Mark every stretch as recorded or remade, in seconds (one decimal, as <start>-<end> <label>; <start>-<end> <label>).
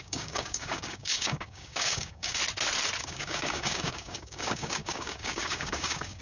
0.0-2.4 remade; 2.4-3.0 recorded; 3.0-6.2 remade